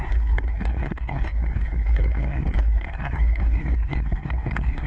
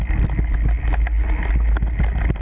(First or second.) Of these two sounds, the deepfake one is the first